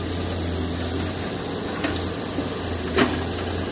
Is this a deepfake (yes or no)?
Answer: no